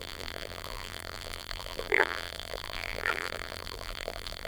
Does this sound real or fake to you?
fake